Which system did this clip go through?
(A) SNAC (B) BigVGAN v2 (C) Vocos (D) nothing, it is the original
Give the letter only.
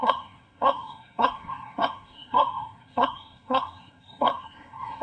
A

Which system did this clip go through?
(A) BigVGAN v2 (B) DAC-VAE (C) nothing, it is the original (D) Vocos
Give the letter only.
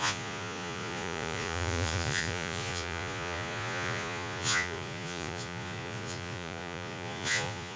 D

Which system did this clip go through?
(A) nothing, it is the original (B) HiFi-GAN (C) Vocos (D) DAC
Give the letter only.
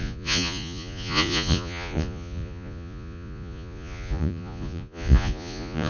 C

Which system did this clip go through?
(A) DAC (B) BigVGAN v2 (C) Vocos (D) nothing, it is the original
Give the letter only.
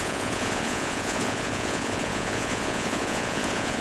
C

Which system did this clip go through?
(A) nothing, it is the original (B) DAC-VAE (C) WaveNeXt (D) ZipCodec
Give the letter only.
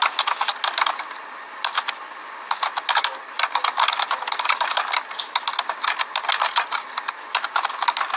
A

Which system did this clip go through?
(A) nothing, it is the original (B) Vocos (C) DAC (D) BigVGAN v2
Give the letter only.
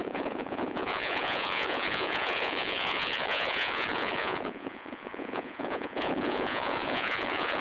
B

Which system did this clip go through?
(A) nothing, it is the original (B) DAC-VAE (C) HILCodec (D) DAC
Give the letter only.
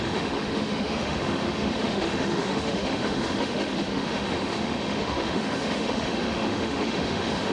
B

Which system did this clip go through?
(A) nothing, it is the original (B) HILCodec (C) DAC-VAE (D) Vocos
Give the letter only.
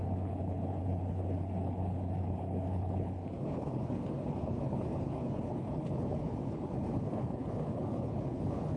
B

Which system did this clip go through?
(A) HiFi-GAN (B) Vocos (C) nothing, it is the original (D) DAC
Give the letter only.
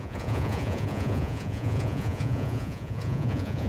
B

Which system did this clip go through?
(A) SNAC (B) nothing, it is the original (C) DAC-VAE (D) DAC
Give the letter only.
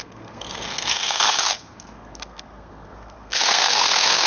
A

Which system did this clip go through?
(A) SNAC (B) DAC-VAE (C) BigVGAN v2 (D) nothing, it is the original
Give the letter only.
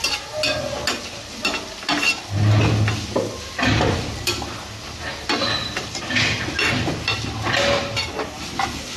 D